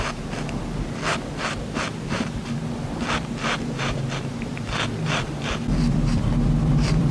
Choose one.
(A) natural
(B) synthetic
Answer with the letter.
B